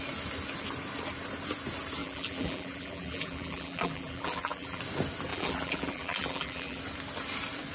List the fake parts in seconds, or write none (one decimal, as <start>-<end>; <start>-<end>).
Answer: 2.0-4.8; 5.3-6.8